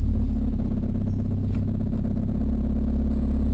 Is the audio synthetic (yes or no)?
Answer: no